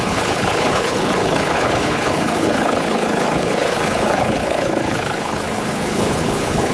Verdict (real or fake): fake